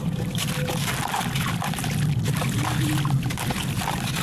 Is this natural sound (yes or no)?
yes